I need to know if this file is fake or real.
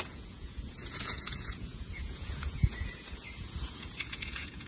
fake